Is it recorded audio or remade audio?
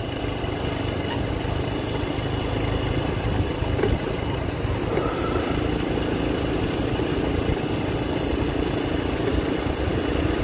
remade